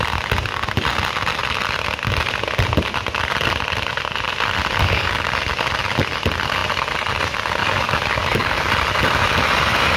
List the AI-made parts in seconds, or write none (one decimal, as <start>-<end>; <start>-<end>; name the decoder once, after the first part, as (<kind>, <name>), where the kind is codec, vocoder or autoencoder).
4.8-5.3 (codec, DAC); 7.6-8.7